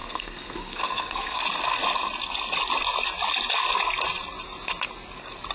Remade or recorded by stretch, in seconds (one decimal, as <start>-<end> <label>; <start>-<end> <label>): 0.0-1.4 remade; 1.4-5.5 recorded